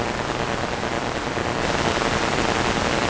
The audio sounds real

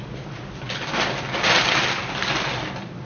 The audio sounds real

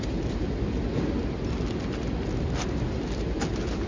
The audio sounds real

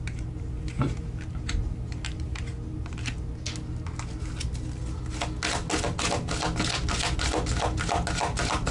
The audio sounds real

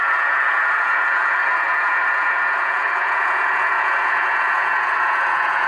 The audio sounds fake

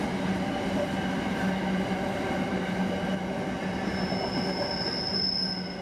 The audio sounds real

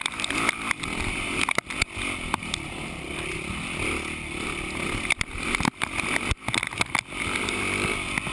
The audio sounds real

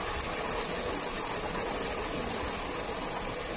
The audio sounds real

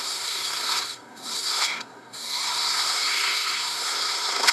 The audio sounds fake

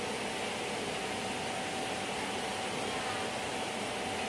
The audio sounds real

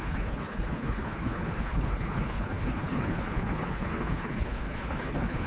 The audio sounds fake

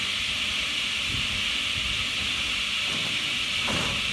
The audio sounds real